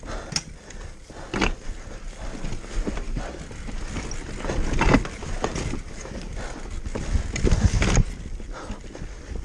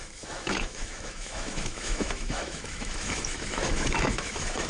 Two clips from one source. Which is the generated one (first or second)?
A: second